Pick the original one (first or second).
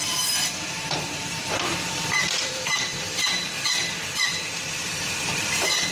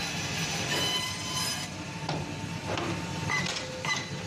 second